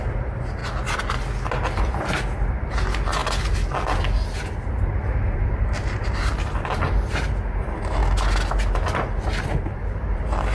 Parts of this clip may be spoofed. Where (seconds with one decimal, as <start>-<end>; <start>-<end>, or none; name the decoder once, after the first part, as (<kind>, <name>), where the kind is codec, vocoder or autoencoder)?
0.0-0.6 (vocoder, BigVGAN v2); 2.4-3.2; 4.8-8.0; 9.2-10.5